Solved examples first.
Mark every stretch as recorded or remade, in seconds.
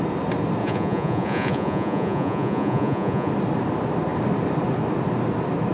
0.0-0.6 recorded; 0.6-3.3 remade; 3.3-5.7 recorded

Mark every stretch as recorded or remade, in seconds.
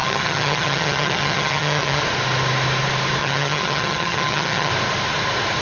0.0-2.0 remade; 2.0-3.2 recorded; 3.2-4.7 remade; 4.7-5.6 recorded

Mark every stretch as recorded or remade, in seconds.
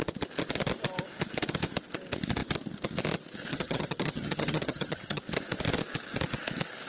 0.0-3.5 recorded; 3.5-5.2 remade; 5.2-6.9 recorded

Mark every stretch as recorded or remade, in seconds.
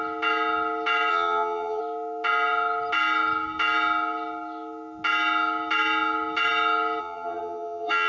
0.0-1.1 recorded; 1.1-1.8 remade; 1.8-7.0 recorded; 7.0-8.1 remade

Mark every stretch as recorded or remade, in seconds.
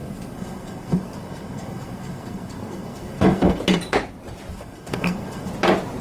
0.0-3.6 remade; 3.6-4.5 recorded; 4.5-5.5 remade; 5.5-6.0 recorded